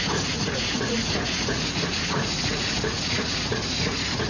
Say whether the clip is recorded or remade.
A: remade